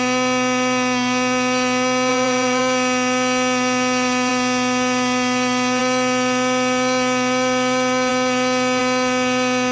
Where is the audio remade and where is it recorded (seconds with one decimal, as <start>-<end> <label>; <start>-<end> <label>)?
0.0-2.1 recorded; 2.1-2.6 remade; 2.6-9.7 recorded